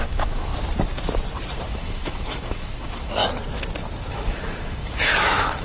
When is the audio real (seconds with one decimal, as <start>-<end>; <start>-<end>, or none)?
0.5-1.6; 3.2-4.1